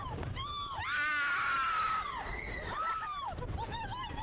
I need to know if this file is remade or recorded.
recorded